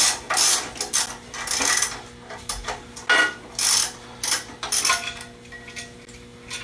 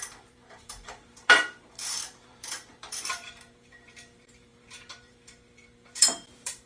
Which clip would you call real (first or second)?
first